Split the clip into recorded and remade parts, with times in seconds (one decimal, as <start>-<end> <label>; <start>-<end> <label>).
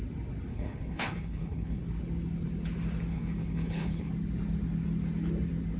0.0-0.5 recorded; 0.5-1.8 remade; 1.8-3.1 recorded; 3.1-4.1 remade; 4.1-5.8 recorded